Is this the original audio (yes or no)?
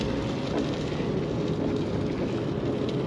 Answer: yes